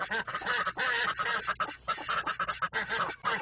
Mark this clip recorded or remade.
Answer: recorded